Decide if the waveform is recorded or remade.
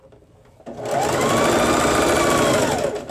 recorded